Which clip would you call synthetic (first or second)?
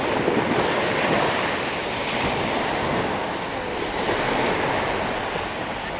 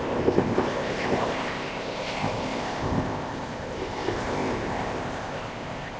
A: second